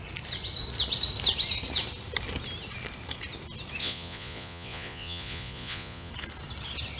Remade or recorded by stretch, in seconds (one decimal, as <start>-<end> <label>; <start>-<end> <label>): 0.0-3.8 recorded; 3.8-6.1 remade; 6.1-7.0 recorded